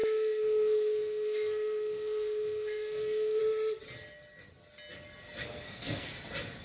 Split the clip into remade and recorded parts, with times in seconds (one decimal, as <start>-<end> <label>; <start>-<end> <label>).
0.0-3.4 remade; 3.4-5.4 recorded; 5.4-6.1 remade; 6.1-6.6 recorded